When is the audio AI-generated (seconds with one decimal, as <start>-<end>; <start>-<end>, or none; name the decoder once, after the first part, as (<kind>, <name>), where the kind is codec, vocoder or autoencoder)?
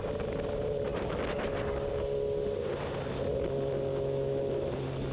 3.9-4.4 (autoencoder, DAC-VAE)